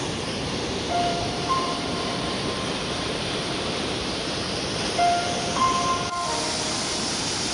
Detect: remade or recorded remade